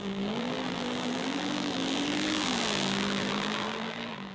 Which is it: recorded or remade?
remade